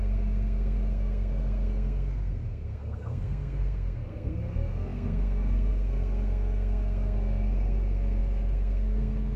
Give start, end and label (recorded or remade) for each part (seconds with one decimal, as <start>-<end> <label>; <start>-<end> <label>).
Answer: 0.0-9.4 remade